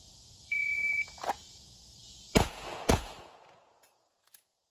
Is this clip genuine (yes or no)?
no